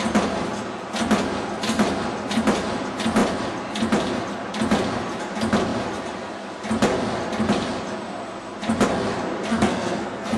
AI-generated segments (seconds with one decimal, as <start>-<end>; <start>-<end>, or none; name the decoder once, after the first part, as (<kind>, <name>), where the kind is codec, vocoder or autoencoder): 9.5-10.4 (codec, SNAC)